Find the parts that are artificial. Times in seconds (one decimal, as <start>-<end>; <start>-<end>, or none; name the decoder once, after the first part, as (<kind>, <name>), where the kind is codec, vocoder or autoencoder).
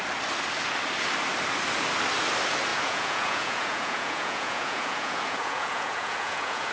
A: 2.7-6.7 (vocoder, Vocos)